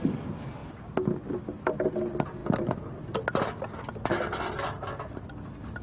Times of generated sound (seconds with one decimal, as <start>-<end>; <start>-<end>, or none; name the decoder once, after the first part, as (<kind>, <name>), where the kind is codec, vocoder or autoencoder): none